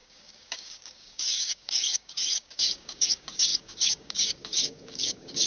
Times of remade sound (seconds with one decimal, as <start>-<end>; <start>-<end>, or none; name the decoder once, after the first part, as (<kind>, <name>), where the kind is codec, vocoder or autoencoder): 0.0-5.5 (codec, DAC)